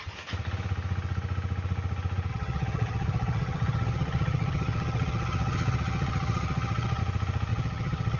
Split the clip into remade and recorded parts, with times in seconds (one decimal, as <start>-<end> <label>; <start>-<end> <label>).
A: 0.0-2.3 recorded; 2.3-7.0 remade; 7.0-7.5 recorded; 7.5-8.2 remade